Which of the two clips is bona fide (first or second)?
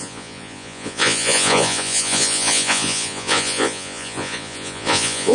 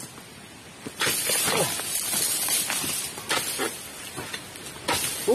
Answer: second